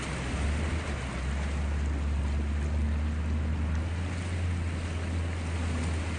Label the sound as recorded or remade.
recorded